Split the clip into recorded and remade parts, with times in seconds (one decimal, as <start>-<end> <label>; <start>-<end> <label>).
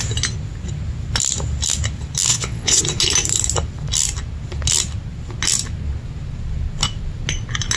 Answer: 0.0-2.3 recorded; 2.3-2.8 remade; 2.8-7.8 recorded